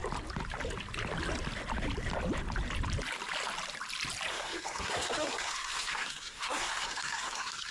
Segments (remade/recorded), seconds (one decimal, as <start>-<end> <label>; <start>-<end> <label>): 0.0-4.3 recorded; 4.3-7.7 remade